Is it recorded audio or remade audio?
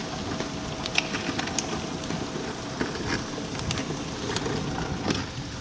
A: recorded